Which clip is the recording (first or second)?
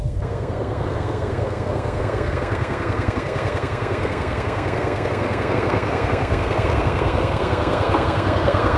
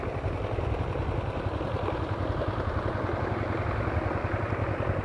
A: second